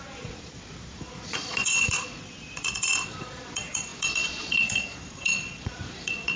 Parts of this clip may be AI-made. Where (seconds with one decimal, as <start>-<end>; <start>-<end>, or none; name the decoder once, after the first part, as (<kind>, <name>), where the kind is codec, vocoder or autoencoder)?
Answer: 0.0-6.4 (vocoder, Vocos)